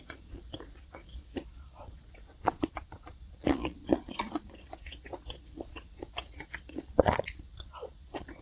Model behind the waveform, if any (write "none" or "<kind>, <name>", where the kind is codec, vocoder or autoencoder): vocoder, Vocos